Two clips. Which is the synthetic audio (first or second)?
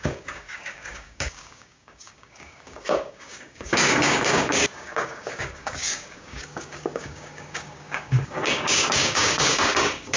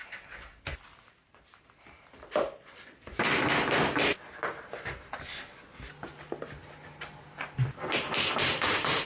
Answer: first